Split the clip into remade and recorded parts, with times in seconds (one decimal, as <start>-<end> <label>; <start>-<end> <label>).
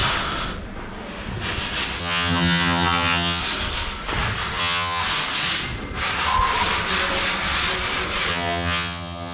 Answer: 0.0-2.0 recorded; 2.0-3.4 remade; 3.4-4.6 recorded; 4.6-5.0 remade; 5.0-8.3 recorded; 8.3-9.3 remade